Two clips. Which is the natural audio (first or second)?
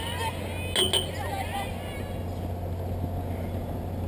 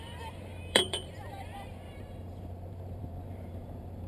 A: first